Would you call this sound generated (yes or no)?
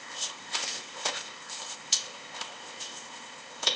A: yes